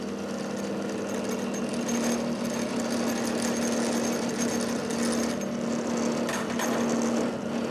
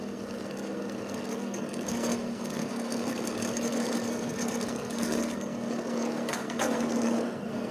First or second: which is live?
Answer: first